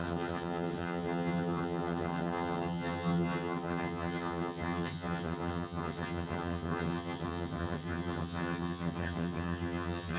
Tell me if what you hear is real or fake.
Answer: fake